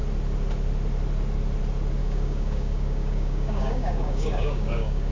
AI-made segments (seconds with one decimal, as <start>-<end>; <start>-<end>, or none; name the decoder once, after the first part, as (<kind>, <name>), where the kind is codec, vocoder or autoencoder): 2.0-5.1 (codec, DAC)